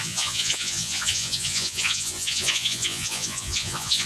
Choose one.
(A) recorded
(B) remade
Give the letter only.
B